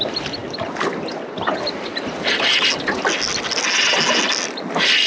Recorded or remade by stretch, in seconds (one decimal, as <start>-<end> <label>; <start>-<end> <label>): 0.0-5.1 recorded